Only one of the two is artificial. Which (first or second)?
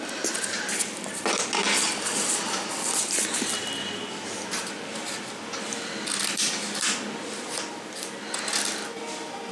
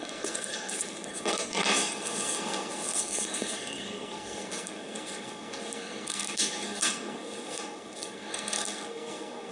second